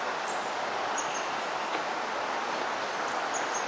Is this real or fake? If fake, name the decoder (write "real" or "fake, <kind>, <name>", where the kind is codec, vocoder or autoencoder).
real